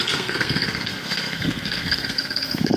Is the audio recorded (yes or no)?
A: no